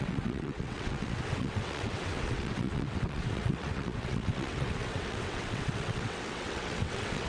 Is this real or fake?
fake